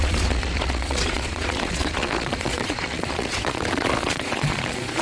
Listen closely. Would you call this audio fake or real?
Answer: fake